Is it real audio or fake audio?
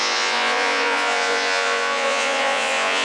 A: fake